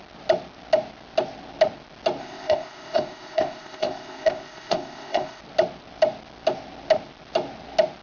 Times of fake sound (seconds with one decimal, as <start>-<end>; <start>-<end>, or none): 2.2-5.4

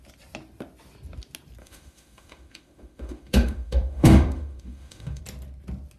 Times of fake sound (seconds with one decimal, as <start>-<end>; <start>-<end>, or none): 1.6-5.2

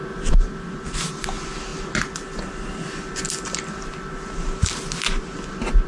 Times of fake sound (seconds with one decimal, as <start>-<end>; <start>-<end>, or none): none

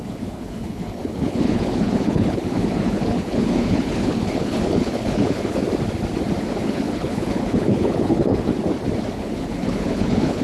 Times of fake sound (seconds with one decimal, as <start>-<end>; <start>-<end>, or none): 0.0-5.6; 6.4-8.5; 9.1-10.4

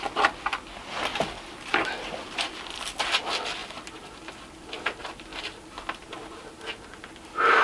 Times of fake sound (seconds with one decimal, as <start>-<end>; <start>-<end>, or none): 1.1-3.0; 3.6-4.1; 5.3-6.7

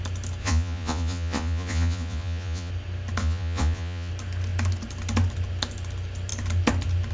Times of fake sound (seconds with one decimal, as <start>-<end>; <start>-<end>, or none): 0.4-2.7; 3.2-4.1